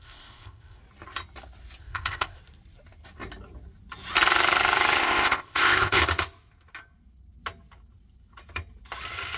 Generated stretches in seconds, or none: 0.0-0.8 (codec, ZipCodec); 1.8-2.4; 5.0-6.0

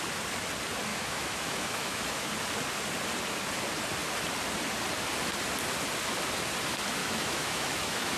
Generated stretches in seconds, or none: 0.9-2.3 (autoencoder, DAC-VAE); 7.0-8.2

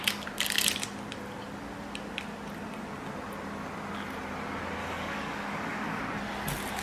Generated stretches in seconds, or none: 4.8-6.0 (codec, DAC)